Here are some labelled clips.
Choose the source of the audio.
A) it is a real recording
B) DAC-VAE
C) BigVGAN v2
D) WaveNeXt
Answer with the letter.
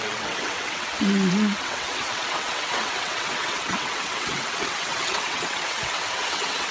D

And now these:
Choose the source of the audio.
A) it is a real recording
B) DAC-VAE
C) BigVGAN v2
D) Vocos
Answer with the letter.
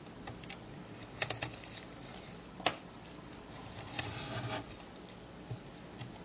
A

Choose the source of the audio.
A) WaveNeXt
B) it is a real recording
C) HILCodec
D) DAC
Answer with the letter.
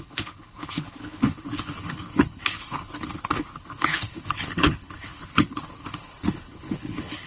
C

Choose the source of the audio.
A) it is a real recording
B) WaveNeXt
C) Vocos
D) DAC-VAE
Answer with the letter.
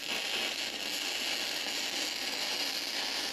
A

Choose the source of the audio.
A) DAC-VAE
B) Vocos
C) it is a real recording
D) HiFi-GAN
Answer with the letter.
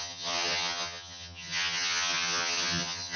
D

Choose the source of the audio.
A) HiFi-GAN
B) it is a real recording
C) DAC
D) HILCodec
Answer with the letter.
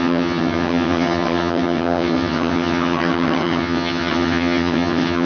A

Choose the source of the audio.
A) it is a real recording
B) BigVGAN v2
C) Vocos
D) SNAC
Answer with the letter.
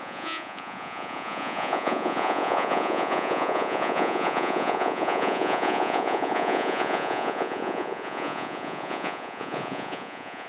C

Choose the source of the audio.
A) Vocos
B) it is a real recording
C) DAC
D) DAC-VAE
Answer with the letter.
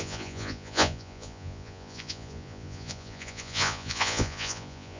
A